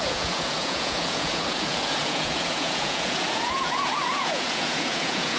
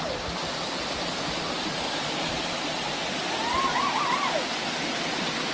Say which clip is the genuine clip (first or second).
second